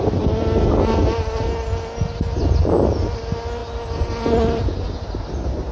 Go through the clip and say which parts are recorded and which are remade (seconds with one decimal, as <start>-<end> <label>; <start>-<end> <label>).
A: 0.0-5.7 recorded